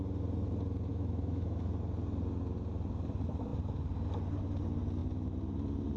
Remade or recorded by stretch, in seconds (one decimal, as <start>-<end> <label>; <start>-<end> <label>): 0.0-0.9 recorded; 0.9-1.6 remade; 1.6-6.0 recorded